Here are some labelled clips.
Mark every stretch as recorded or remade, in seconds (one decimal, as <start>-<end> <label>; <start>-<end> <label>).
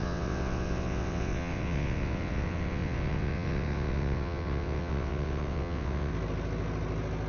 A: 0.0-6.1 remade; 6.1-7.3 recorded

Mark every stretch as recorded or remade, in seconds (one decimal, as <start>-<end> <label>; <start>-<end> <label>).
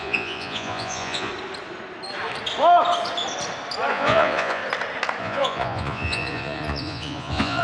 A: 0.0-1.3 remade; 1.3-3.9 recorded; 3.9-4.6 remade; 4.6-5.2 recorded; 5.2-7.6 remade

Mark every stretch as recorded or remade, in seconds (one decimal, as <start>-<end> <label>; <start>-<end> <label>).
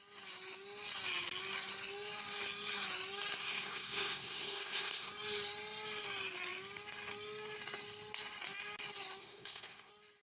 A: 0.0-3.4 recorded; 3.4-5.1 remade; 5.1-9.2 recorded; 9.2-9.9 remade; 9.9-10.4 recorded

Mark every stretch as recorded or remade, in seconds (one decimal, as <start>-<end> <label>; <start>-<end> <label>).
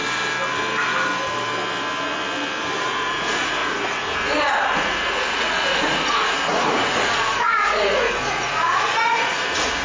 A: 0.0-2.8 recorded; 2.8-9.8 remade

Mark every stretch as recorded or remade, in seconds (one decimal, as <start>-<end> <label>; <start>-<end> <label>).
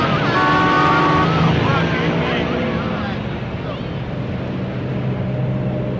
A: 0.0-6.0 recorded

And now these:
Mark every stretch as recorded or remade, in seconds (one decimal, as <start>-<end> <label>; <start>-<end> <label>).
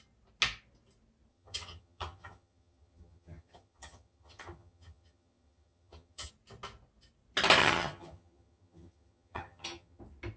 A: 0.0-1.3 recorded; 1.3-6.3 remade; 6.3-7.6 recorded; 7.6-10.0 remade; 10.0-10.4 recorded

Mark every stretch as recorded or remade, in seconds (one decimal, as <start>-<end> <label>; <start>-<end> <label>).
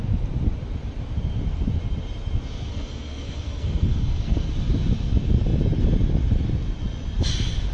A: 0.0-2.7 recorded; 2.7-4.5 remade; 4.5-7.7 recorded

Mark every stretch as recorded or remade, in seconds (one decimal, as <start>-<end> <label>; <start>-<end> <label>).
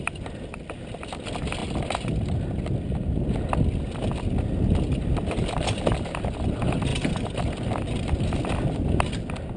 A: 0.0-9.6 recorded